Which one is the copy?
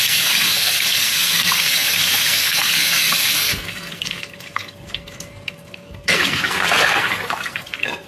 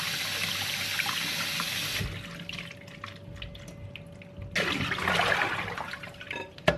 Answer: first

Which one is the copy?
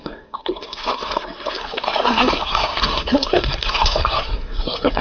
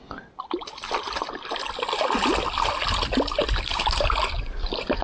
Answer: first